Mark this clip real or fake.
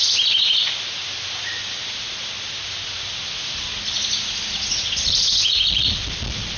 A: real